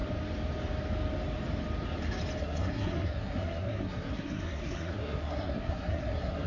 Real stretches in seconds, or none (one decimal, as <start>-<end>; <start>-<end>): 0.0-2.4